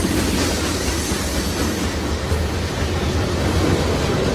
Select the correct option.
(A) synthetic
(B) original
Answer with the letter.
B